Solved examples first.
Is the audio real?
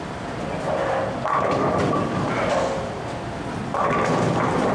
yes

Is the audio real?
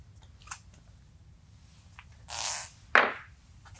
yes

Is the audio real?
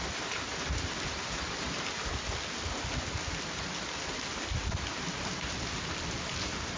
yes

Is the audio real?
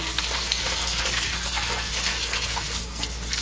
no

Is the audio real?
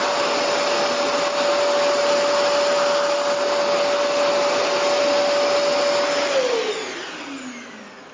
yes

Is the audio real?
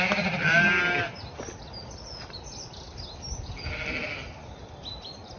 yes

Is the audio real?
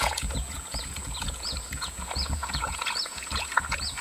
no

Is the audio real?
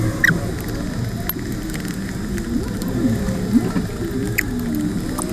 yes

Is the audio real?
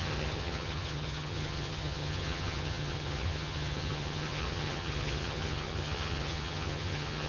no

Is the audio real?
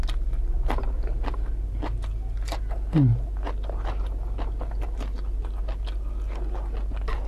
yes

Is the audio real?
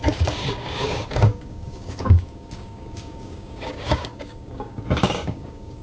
no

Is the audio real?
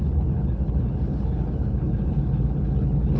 no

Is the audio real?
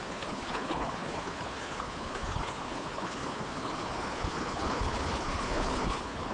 no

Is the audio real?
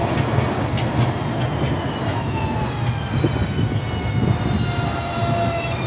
yes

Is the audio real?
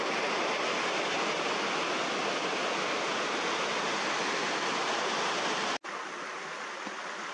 yes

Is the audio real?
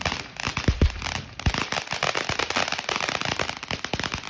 yes